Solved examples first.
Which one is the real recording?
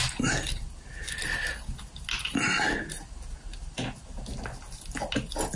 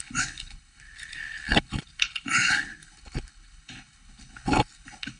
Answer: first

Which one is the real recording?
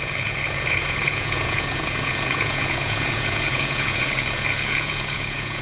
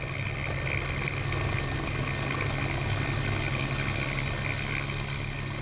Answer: second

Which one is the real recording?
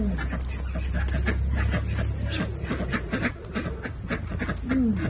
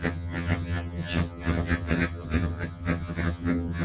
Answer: first